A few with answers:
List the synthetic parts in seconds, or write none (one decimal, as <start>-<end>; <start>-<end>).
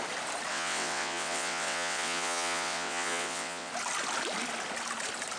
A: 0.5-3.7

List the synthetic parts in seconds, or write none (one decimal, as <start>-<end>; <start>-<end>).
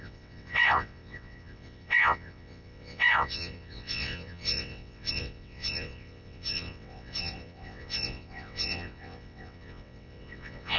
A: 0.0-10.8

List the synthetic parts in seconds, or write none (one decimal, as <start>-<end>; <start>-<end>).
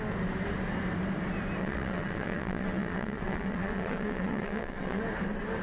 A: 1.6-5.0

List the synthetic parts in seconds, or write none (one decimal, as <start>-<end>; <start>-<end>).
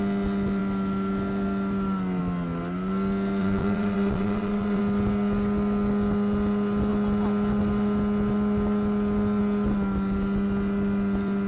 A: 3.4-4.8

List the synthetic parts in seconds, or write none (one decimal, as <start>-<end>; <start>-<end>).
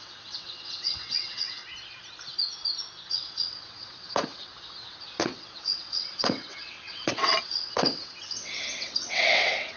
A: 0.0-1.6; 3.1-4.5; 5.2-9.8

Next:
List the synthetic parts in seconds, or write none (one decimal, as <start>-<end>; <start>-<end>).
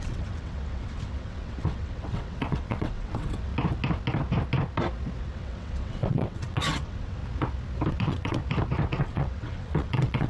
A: 0.0-3.5; 5.2-7.2; 7.9-8.4; 9.0-10.3